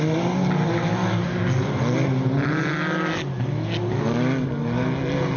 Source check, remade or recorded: recorded